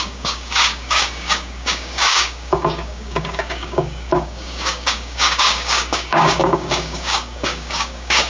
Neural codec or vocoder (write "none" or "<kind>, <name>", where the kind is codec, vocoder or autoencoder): codec, DAC